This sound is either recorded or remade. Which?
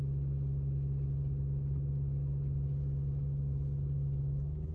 recorded